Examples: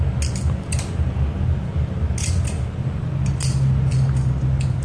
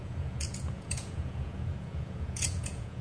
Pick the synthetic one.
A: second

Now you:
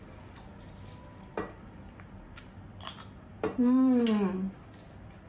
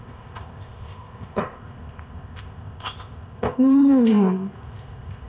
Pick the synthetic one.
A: second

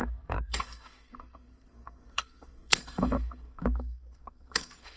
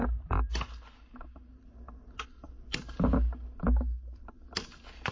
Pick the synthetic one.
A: first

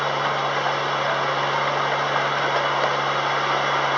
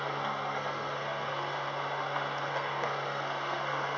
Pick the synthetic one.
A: second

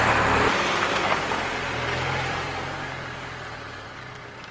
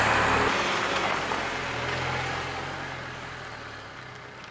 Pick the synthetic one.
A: first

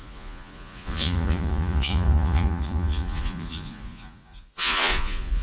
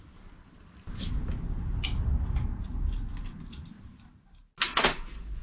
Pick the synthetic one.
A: first